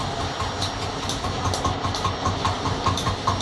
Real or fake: real